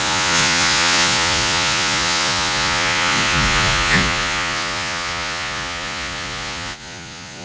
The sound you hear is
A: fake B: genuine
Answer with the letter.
A